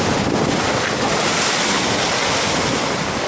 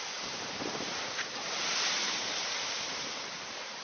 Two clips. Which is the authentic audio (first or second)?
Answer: first